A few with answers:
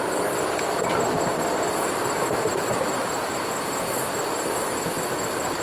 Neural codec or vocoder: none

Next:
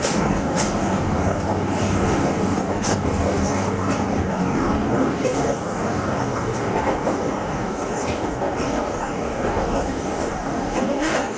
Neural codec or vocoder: codec, DAC